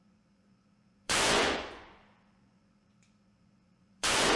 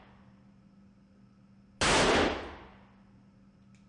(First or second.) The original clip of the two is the second